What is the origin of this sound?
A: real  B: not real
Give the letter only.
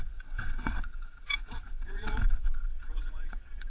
B